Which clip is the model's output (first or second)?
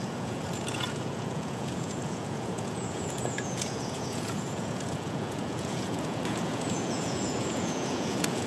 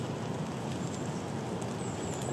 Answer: first